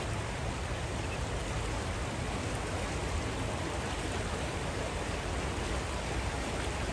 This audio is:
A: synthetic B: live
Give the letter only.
B